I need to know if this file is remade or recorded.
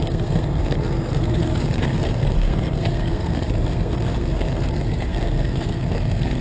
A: remade